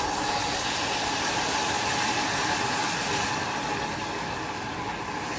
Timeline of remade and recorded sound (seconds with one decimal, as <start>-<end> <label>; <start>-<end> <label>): 0.0-5.4 recorded